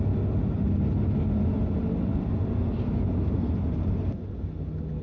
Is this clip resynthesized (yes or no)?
no